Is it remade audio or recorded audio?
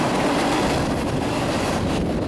recorded